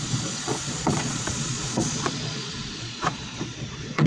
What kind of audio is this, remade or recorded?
remade